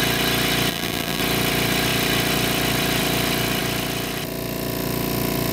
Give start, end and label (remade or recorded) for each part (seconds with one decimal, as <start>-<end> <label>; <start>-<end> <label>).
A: 0.0-0.7 recorded; 0.7-1.2 remade; 1.2-5.5 recorded